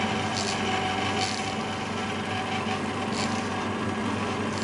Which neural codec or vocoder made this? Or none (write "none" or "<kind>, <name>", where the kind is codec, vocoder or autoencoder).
none